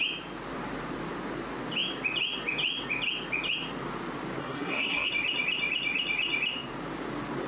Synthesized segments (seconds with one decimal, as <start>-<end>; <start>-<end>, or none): 4.4-5.1